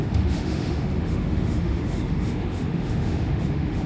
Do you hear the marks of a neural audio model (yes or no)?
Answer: yes